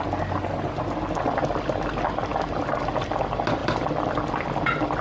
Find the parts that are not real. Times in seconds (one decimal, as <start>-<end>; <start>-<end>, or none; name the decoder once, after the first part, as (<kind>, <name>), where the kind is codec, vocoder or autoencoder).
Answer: 2.3-3.2 (vocoder, BigVGAN v2)